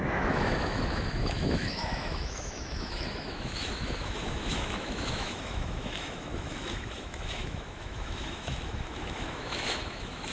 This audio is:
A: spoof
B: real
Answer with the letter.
A